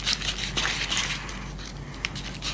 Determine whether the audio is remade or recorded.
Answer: recorded